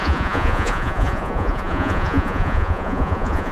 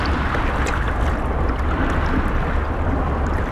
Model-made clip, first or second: first